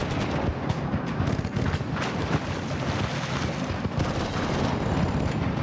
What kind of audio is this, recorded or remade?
recorded